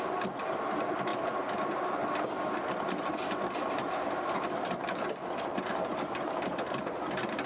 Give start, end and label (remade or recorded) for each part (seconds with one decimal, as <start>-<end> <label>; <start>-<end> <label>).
0.0-7.5 recorded